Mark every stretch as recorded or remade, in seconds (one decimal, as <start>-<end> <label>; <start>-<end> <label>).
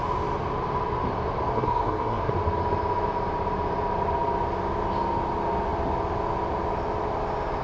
0.0-1.5 recorded; 1.5-2.3 remade; 2.3-7.6 recorded